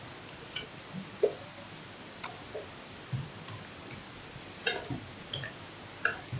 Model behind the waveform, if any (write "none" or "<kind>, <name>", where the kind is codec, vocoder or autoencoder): vocoder, BigVGAN v2